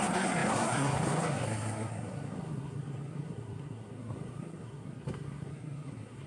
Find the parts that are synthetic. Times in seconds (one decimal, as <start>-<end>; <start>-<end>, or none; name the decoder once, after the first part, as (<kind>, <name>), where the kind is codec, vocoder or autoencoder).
0.0-6.3 (codec, SNAC)